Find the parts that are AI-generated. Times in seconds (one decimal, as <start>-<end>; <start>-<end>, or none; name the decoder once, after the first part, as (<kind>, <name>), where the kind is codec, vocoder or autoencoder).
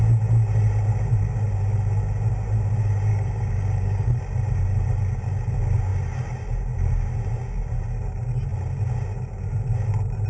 3.1-4.2 (codec, DAC)